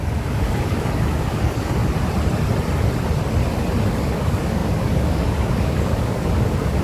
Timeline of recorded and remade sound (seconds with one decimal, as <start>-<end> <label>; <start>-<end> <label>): 0.0-1.8 remade; 1.8-4.0 recorded; 4.0-6.8 remade